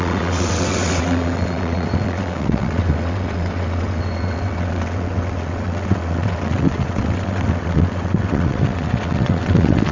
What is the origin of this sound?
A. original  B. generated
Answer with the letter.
B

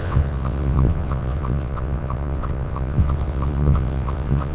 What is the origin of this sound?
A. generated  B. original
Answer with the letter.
A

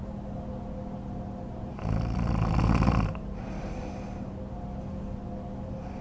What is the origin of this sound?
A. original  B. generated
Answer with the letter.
A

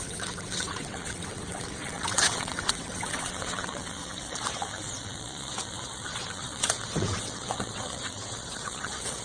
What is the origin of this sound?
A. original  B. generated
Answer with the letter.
B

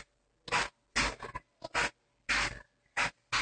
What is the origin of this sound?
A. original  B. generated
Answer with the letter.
A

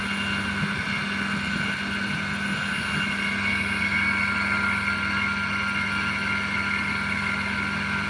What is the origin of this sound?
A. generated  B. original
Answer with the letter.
B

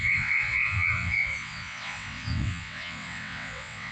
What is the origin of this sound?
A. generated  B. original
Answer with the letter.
A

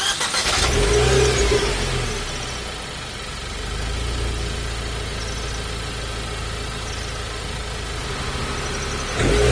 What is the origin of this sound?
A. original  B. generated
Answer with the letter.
A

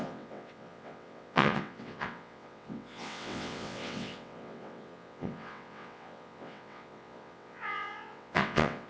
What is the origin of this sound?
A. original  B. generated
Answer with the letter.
B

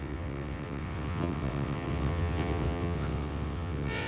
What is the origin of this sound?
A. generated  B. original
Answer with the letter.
A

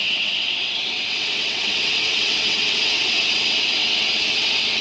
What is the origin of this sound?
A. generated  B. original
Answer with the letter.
A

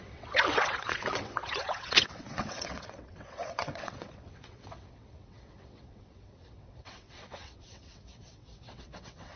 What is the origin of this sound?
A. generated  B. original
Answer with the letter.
A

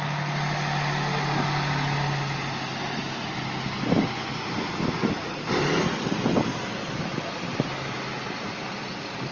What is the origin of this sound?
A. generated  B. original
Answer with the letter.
B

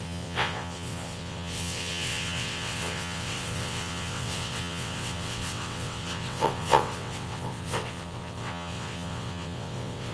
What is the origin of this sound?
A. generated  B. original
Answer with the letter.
A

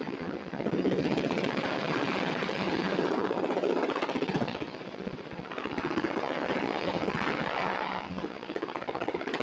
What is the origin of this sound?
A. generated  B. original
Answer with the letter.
A